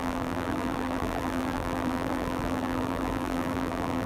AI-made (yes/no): yes